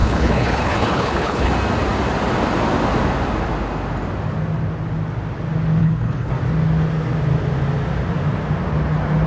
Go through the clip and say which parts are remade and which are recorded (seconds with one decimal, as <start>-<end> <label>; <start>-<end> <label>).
0.0-1.5 remade; 1.5-5.8 recorded; 5.8-6.3 remade; 6.3-9.3 recorded